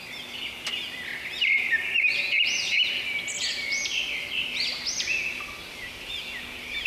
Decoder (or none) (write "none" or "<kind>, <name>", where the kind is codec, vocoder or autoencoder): none